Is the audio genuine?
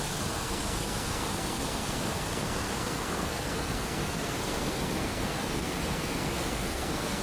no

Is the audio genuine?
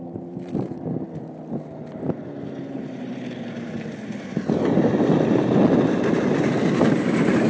yes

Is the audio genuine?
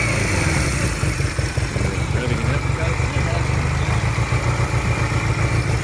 yes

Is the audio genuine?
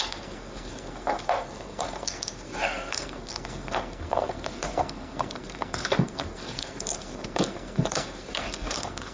no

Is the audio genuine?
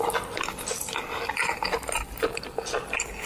yes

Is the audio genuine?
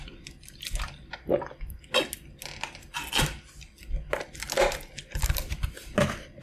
yes